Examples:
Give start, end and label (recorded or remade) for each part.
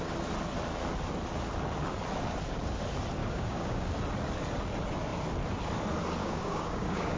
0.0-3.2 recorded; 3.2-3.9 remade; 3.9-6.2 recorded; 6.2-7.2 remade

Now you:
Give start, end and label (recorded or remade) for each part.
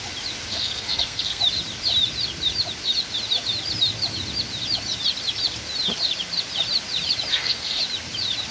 0.0-0.5 recorded; 0.5-1.4 remade; 1.4-7.3 recorded; 7.3-7.8 remade; 7.8-8.5 recorded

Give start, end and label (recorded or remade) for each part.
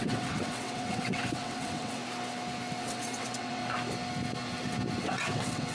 0.0-2.0 remade; 2.0-2.8 recorded; 2.8-3.6 remade; 3.6-5.0 recorded; 5.0-5.7 remade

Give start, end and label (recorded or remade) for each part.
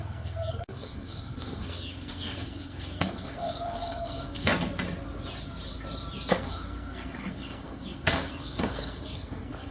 0.0-4.5 remade; 4.5-6.3 recorded; 6.3-9.7 remade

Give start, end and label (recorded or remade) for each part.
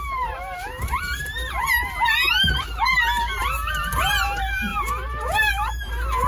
0.0-1.3 remade; 1.3-3.4 recorded; 3.4-6.3 remade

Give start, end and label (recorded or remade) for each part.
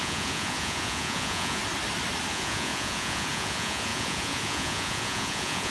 0.0-1.6 remade; 1.6-2.3 recorded; 2.3-5.7 remade